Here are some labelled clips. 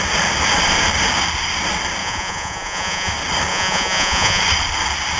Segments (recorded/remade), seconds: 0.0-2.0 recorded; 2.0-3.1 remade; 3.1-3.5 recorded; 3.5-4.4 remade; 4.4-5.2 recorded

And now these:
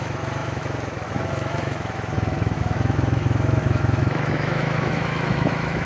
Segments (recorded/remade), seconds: 0.0-5.8 remade

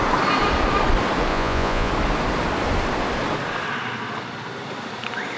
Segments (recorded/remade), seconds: 0.0-1.3 recorded; 1.3-1.9 remade; 1.9-5.4 recorded

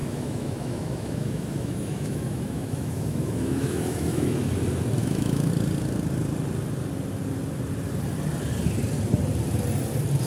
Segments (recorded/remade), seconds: 0.0-4.5 remade; 4.5-5.0 recorded; 5.0-5.5 remade; 5.5-10.3 recorded

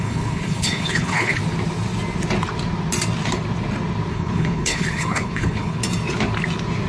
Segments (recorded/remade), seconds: 0.0-1.4 remade; 1.4-4.1 recorded; 4.1-5.8 remade; 5.8-6.9 recorded